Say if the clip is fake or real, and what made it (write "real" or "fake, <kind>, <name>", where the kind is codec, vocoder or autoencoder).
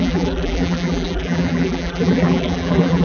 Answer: fake, vocoder, BigVGAN v2